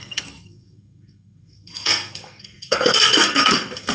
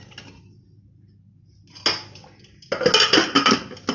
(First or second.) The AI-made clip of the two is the first